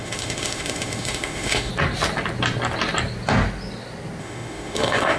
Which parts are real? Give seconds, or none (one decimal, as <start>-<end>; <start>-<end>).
1.7-4.2